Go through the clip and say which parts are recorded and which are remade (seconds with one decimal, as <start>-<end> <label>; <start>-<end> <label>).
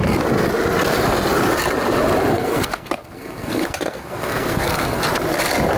0.0-2.3 recorded; 2.3-5.0 remade; 5.0-5.8 recorded